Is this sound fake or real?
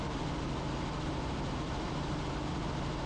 real